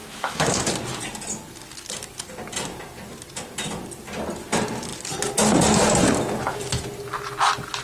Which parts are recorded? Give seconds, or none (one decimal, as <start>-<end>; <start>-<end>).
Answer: 0.6-7.8